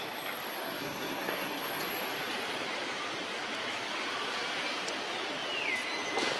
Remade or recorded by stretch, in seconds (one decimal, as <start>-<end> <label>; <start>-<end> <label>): 0.0-0.5 recorded; 0.5-1.8 remade; 1.8-6.4 recorded